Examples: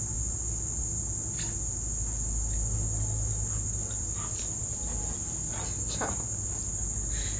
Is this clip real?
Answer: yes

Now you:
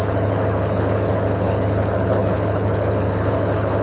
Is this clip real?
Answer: no